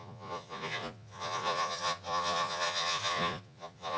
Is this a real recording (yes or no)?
no